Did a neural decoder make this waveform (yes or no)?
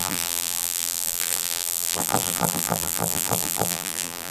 yes